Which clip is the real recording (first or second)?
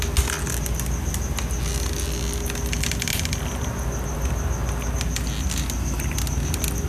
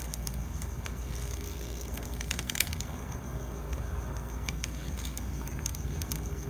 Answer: first